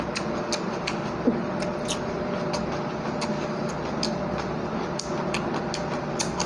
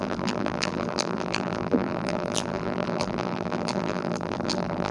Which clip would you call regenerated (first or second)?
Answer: second